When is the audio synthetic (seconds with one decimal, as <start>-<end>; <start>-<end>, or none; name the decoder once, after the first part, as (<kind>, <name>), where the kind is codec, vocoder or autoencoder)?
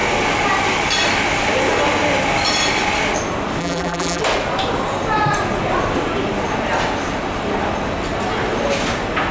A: 3.6-4.2 (vocoder, BigVGAN v2)